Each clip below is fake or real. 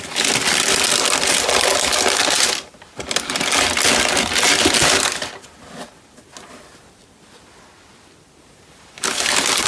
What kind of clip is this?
real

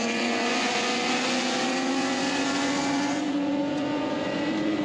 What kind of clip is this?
fake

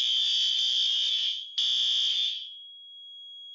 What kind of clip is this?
real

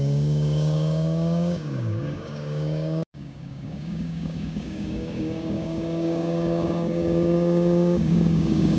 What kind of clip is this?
fake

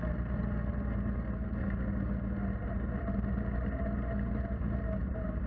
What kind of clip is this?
real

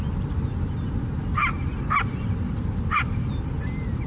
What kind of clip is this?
real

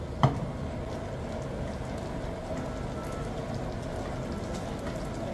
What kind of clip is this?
real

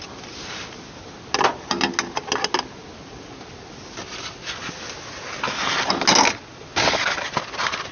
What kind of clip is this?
real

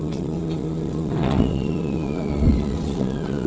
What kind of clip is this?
fake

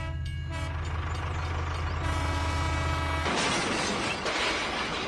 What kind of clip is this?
real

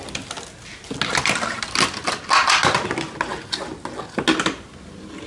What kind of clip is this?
real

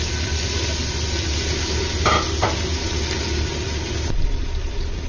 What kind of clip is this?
real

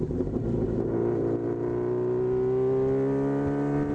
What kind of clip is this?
real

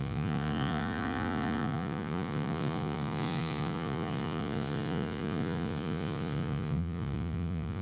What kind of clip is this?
fake